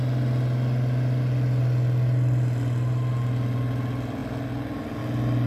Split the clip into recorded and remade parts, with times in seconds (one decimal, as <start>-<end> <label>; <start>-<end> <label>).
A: 0.0-5.5 recorded